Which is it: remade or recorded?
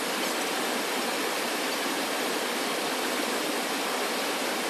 recorded